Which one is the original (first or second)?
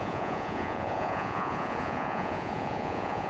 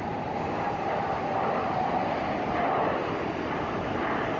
second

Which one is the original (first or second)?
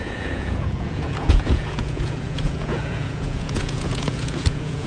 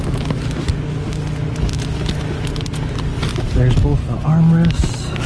second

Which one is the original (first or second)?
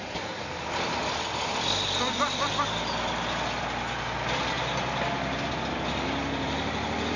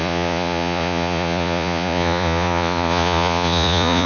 first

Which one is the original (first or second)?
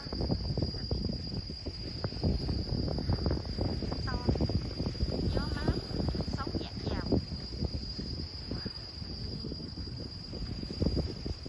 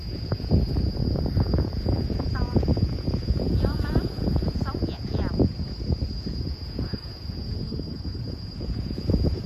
first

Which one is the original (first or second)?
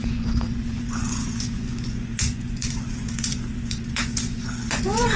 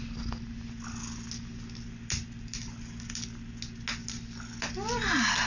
second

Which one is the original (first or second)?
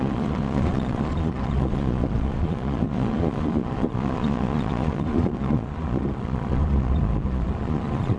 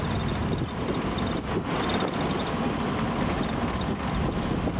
second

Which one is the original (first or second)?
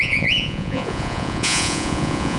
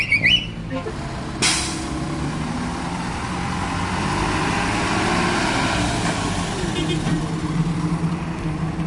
second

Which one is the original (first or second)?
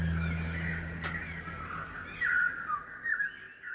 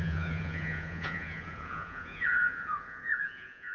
first